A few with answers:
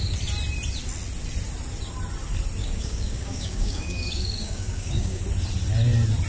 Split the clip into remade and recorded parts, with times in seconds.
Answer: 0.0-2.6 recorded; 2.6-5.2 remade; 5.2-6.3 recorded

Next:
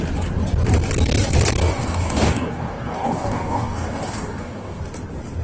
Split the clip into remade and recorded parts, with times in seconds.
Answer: 0.0-1.6 recorded; 1.6-4.8 remade; 4.8-5.4 recorded

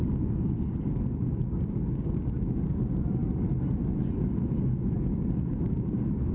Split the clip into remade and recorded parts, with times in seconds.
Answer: 0.0-3.2 remade; 3.2-5.0 recorded; 5.0-6.3 remade